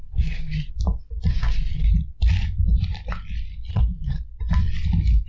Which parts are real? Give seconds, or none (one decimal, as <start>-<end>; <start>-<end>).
0.7-1.3; 1.9-3.7; 4.4-5.3